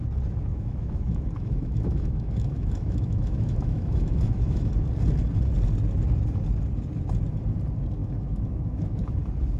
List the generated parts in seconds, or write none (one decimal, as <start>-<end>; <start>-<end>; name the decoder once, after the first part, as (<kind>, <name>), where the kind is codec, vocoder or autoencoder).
0.5-4.7 (autoencoder, DAC-VAE); 8.0-9.2

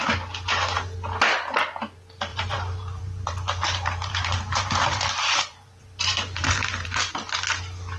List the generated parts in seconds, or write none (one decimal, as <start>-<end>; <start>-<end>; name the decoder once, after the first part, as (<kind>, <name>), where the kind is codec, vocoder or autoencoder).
2.3-7.1 (vocoder, BigVGAN v2)

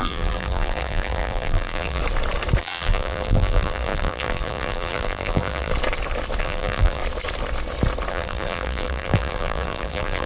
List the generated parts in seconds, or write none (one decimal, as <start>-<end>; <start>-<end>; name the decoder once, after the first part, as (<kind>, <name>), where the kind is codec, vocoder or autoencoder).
0.0-2.0 (vocoder, BigVGAN v2); 2.6-5.7; 6.4-7.0; 8.1-10.3

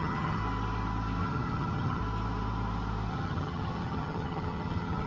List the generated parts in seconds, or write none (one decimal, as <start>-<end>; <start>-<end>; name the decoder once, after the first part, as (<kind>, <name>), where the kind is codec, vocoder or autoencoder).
0.0-0.4 (vocoder, HiFi-GAN); 1.2-2.0; 3.1-5.1